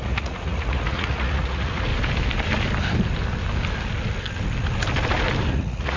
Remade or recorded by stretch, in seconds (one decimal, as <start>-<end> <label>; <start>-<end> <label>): 0.0-1.9 remade; 1.9-5.5 recorded; 5.5-6.0 remade